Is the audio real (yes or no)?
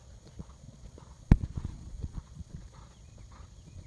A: no